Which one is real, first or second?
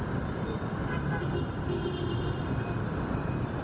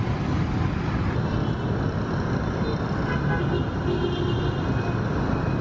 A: second